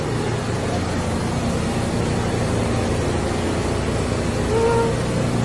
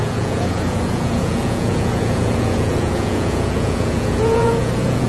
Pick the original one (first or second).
first